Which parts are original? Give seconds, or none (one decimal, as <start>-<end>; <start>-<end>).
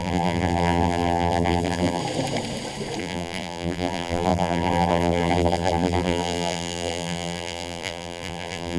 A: 2.0-3.0